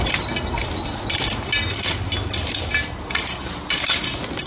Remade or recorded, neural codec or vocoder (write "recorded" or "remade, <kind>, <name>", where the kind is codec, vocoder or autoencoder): recorded